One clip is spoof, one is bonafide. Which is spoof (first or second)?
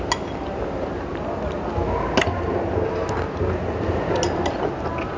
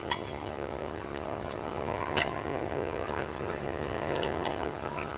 second